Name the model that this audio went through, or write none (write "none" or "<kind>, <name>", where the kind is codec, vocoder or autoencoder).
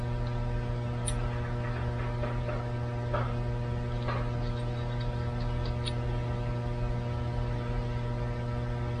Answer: none